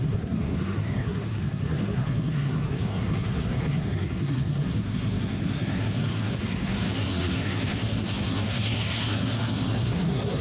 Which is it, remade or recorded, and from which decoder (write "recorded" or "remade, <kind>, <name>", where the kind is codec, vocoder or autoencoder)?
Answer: remade, codec, SNAC